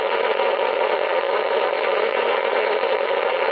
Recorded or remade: remade